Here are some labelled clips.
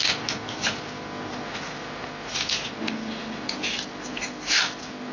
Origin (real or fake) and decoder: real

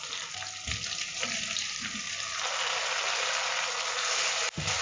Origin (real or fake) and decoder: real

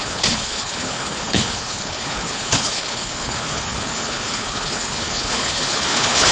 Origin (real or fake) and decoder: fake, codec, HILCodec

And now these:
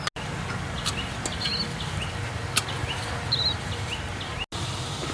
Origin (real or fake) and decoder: real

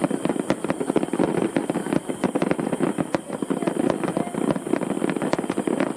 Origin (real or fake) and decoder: real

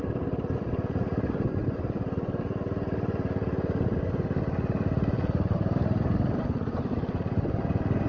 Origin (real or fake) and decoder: real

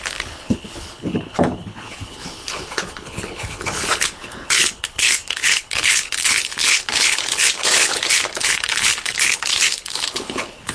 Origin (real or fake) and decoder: fake, codec, HILCodec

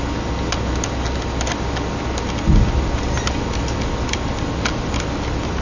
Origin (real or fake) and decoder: real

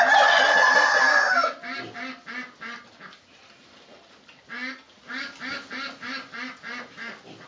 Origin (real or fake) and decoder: real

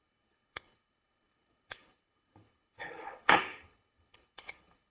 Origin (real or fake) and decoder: fake, codec, HILCodec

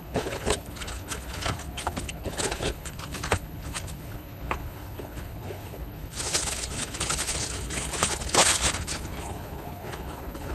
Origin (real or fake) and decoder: fake, codec, HILCodec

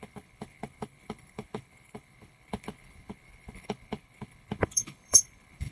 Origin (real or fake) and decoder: fake, codec, HILCodec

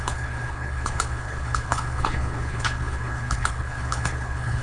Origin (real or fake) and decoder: fake, codec, HILCodec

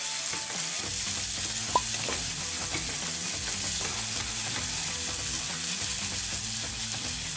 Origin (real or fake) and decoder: real